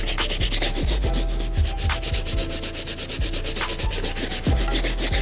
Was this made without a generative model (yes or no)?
yes